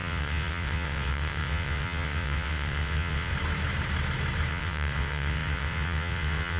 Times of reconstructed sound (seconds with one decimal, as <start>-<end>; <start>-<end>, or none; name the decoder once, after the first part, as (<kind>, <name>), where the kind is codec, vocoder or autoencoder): 0.0-3.3 (vocoder, WaveNeXt); 4.5-6.6